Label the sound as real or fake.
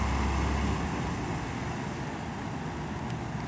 real